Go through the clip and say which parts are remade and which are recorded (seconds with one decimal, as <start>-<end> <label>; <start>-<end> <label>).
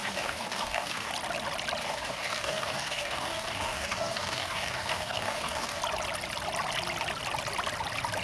0.0-1.1 remade; 1.1-1.8 recorded; 1.8-5.8 remade; 5.8-8.2 recorded